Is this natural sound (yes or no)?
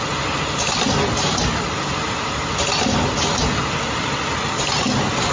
yes